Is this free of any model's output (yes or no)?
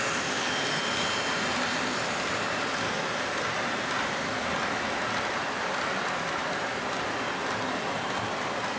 yes